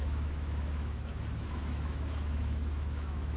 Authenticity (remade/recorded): remade